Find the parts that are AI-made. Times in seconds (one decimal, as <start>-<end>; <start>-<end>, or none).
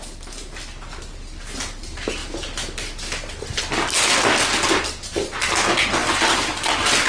none